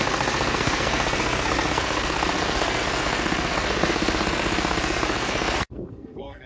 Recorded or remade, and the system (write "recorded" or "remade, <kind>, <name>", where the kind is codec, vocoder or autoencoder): remade, codec, SNAC